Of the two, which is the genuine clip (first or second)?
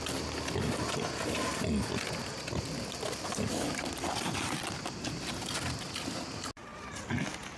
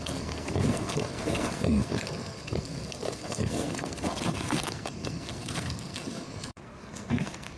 first